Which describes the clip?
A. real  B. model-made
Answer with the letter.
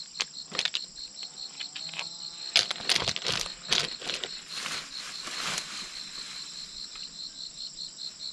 A